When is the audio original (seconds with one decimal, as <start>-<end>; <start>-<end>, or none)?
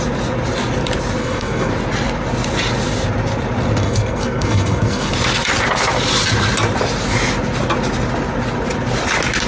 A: 0.0-1.2; 1.7-3.8; 5.1-9.5